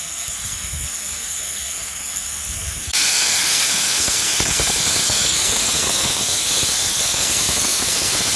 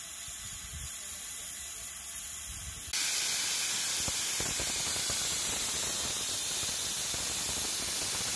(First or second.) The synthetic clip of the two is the first